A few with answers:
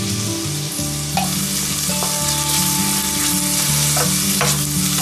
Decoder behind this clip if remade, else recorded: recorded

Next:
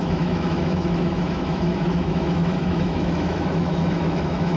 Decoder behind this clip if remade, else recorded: remade, autoencoder, DAC-VAE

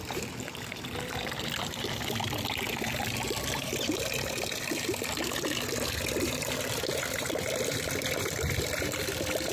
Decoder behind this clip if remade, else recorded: remade, vocoder, BigVGAN v2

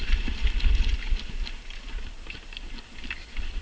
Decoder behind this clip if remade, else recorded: recorded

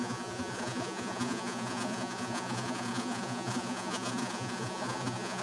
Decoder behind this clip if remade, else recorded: remade, vocoder, Vocos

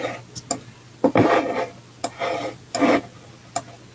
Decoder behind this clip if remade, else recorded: recorded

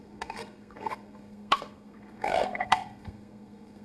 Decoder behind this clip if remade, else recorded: remade, codec, SNAC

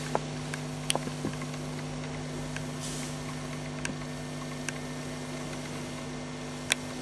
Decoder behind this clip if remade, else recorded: recorded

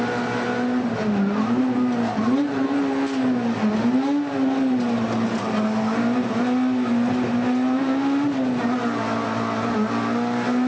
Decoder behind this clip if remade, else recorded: recorded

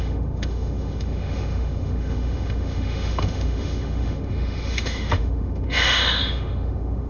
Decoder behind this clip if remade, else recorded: remade, autoencoder, DAC-VAE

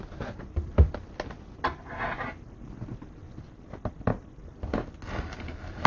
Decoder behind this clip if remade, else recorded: recorded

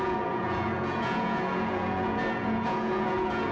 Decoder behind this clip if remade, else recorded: remade, vocoder, Vocos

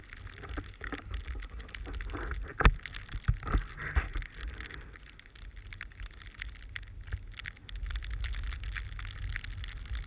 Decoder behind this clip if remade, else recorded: recorded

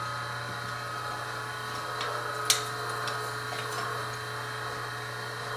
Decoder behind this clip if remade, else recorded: recorded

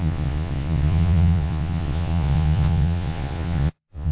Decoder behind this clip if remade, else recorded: remade, vocoder, Vocos